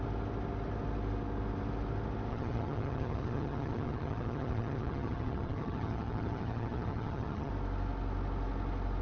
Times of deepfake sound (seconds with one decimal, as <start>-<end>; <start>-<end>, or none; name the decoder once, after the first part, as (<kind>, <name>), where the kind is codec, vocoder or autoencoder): 2.3-7.5 (vocoder, HiFi-GAN)